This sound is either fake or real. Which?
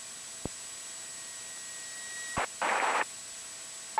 real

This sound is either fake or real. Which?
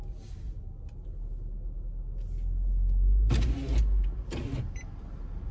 real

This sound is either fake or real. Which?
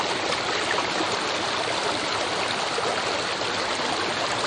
real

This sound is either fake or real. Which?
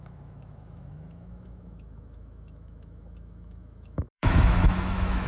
fake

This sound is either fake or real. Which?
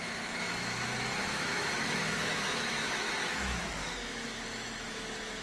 fake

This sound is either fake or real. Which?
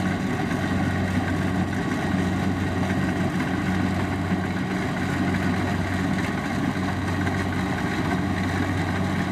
real